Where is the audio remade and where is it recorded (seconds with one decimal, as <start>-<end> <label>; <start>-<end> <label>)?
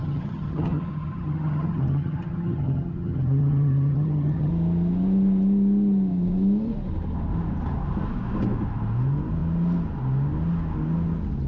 0.0-4.5 remade; 4.5-11.5 recorded